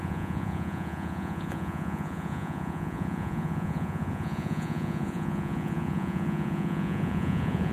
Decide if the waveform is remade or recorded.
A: remade